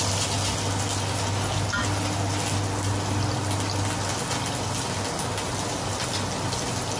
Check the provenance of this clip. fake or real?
real